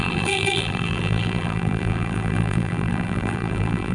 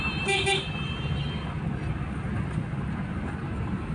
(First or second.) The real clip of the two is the second